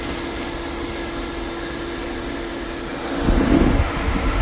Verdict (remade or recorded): recorded